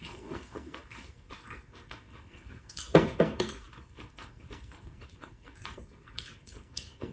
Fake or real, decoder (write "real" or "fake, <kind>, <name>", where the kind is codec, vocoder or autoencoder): fake, codec, SNAC